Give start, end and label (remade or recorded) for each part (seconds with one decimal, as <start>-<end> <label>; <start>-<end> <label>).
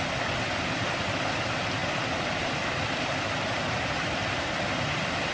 0.0-5.3 recorded